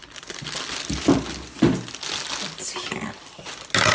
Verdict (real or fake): real